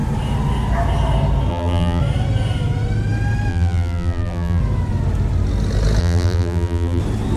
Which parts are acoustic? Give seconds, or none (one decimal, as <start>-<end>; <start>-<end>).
0.0-1.5; 2.0-3.5; 4.6-6.0; 7.0-7.4